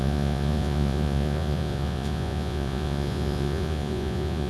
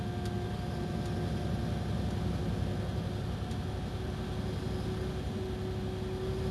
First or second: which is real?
second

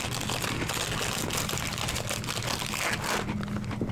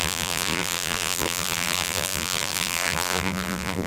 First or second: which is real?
first